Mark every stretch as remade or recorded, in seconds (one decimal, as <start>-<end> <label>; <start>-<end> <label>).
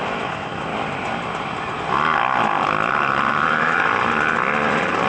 0.0-0.7 remade; 0.7-3.5 recorded; 3.5-3.9 remade; 3.9-5.1 recorded